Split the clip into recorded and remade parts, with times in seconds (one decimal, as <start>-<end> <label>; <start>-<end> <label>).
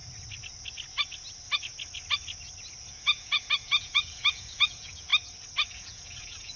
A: 0.0-2.9 recorded; 2.9-5.1 remade; 5.1-5.7 recorded; 5.7-6.6 remade